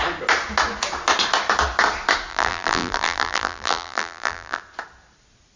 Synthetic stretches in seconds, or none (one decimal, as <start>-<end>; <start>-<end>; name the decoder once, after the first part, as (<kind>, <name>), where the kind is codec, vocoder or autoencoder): 2.3-4.6 (vocoder, BigVGAN v2)